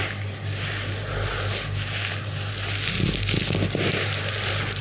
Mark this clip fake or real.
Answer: real